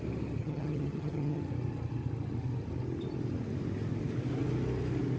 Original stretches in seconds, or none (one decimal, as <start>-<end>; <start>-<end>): 0.0-0.4; 1.4-5.2